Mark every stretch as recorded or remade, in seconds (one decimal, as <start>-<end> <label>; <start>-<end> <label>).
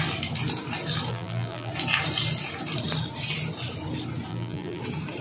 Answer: 0.0-1.1 recorded; 1.1-1.7 remade; 1.7-4.3 recorded; 4.3-4.8 remade; 4.8-5.2 recorded